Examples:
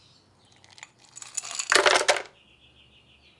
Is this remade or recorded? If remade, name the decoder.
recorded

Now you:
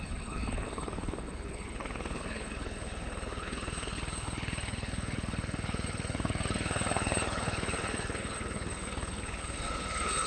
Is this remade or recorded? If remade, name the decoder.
remade, codec, HILCodec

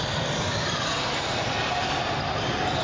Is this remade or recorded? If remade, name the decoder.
recorded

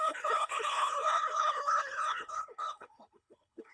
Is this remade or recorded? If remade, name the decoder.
remade, codec, HILCodec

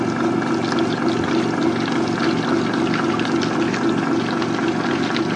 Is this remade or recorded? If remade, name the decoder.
recorded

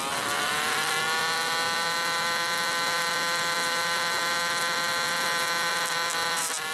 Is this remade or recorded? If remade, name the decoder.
recorded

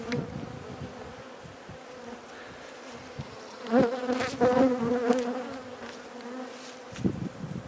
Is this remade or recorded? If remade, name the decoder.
recorded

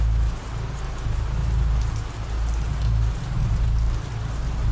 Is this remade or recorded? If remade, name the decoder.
recorded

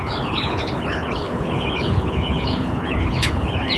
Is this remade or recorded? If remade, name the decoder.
remade, codec, HILCodec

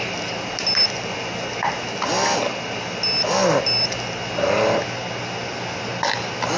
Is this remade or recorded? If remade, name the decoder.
recorded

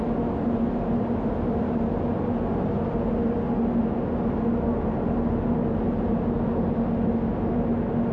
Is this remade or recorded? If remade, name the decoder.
recorded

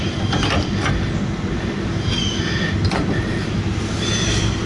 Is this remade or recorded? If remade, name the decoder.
recorded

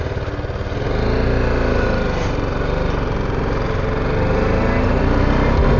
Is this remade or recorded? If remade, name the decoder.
recorded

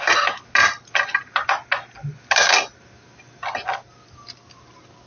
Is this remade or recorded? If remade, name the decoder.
recorded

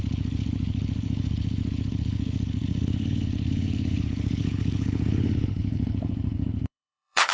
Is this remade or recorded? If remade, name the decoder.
remade, codec, HILCodec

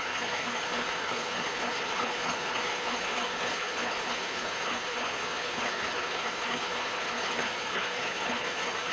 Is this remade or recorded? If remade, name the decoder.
remade, codec, HILCodec